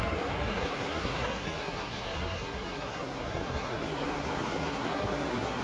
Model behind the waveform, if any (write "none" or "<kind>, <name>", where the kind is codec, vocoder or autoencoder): codec, SNAC